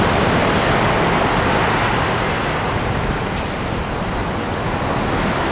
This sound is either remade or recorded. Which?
recorded